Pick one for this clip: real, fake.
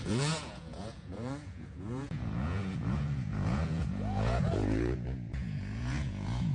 fake